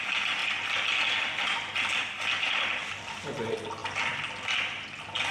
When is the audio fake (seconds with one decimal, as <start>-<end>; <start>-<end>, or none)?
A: none